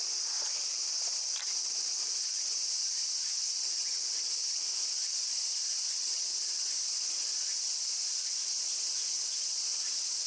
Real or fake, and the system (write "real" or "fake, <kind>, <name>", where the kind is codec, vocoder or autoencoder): real